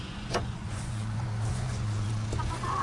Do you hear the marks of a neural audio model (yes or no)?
yes